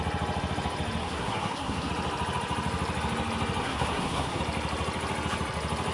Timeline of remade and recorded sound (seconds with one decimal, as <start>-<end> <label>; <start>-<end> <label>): 0.0-1.0 recorded; 1.0-1.9 remade; 1.9-3.6 recorded; 3.6-4.4 remade; 4.4-5.9 recorded